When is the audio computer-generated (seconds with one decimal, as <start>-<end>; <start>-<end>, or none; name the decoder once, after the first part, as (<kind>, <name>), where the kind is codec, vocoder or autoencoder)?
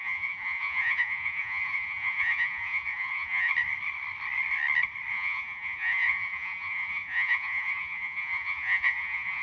0.0-3.5 (vocoder, Vocos); 5.1-9.4